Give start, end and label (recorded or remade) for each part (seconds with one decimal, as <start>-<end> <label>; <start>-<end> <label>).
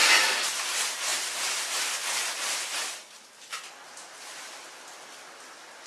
0.0-5.9 recorded